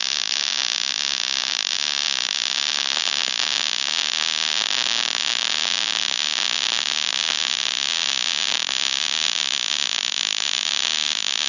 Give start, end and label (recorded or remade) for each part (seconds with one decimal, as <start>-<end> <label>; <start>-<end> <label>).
0.0-11.5 recorded